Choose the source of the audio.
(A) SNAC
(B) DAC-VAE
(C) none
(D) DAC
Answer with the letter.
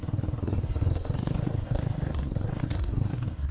A